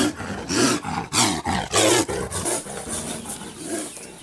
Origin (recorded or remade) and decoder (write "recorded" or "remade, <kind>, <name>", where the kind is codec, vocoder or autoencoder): recorded